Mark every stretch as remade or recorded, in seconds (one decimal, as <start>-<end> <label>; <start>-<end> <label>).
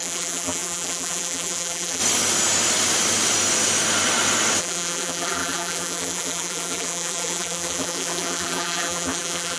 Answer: 0.0-2.0 remade; 2.0-4.6 recorded; 4.6-9.6 remade